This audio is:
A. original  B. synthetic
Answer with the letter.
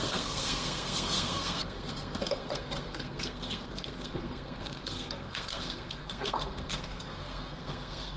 B